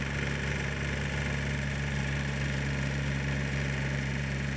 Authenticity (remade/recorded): remade